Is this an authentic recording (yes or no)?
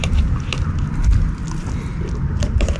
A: yes